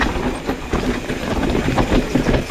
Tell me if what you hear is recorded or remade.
recorded